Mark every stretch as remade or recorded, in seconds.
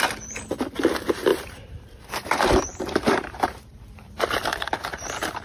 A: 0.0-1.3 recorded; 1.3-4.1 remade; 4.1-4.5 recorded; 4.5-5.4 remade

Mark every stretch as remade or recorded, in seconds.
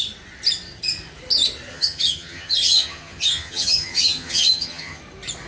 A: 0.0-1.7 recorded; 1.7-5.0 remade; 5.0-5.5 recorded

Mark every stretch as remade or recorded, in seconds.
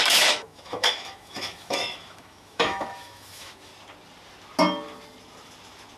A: 0.0-3.7 remade; 3.7-6.0 recorded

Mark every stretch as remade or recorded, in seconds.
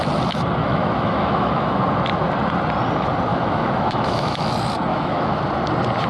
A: 0.0-0.6 recorded; 0.6-1.8 remade; 1.8-3.3 recorded; 3.3-4.4 remade; 4.4-4.9 recorded; 4.9-5.4 remade; 5.4-6.1 recorded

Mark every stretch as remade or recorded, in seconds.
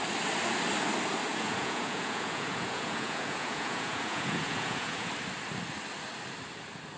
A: 0.0-1.3 recorded; 1.3-5.1 remade; 5.1-7.0 recorded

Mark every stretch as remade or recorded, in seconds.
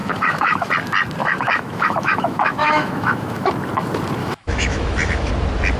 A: 0.0-0.7 remade; 0.7-1.2 recorded; 1.2-3.5 remade; 3.5-4.2 recorded; 4.2-5.3 remade; 5.3-5.8 recorded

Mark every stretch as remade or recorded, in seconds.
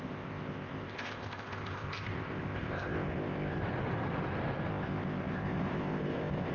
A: 0.0-3.6 remade; 3.6-4.7 recorded; 4.7-6.5 remade